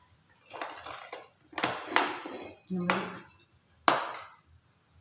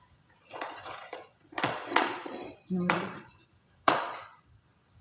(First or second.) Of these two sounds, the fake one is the second